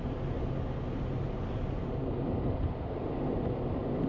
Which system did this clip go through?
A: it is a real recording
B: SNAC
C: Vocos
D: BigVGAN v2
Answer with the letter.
A